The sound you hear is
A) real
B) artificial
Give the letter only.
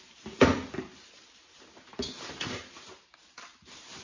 A